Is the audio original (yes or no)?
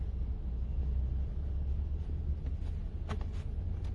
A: yes